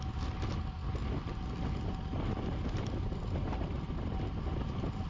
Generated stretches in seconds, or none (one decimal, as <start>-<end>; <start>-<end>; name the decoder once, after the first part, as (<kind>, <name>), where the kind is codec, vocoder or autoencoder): none